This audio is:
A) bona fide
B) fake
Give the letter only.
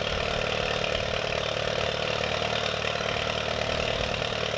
A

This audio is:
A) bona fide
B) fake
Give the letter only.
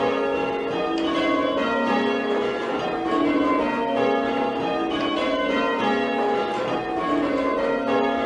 A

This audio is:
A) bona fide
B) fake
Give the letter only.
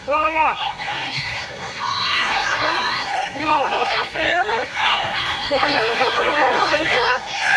B